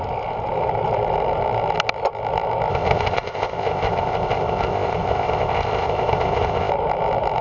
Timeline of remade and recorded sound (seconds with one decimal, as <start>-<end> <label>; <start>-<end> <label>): 0.0-2.7 recorded; 2.7-6.7 remade; 6.7-7.4 recorded